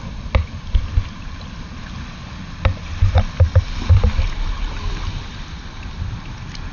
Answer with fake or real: real